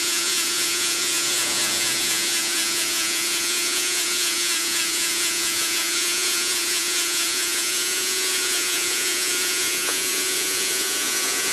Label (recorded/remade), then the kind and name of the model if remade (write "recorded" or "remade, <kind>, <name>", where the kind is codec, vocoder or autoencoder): remade, vocoder, Vocos